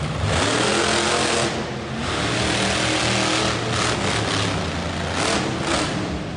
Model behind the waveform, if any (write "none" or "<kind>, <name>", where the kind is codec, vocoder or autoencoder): none